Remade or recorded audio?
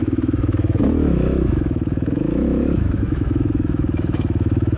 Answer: remade